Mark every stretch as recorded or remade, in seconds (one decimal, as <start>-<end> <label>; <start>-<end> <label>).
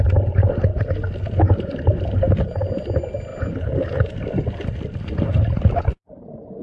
0.0-6.6 recorded